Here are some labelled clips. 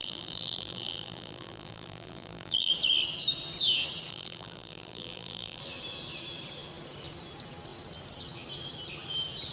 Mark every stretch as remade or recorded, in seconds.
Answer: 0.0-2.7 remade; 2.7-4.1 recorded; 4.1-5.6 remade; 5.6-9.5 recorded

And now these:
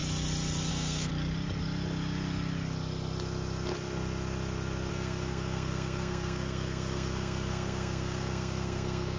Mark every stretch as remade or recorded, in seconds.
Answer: 0.0-0.7 recorded; 0.7-1.1 remade; 1.1-4.9 recorded; 4.9-9.2 remade

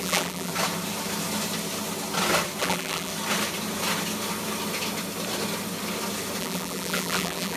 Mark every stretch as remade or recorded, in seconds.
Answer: 0.0-0.5 remade; 0.5-2.6 recorded; 2.6-3.1 remade; 3.1-6.4 recorded; 6.4-7.6 remade

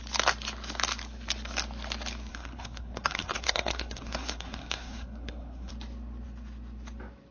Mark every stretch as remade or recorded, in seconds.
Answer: 0.0-2.3 recorded; 2.3-5.7 remade; 5.7-7.3 recorded

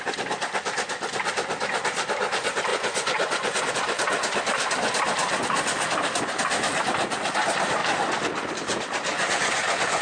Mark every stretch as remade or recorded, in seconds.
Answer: 0.0-2.7 recorded; 2.7-3.7 remade; 3.7-9.1 recorded; 9.1-10.0 remade